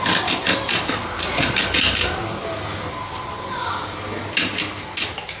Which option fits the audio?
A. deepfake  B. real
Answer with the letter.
B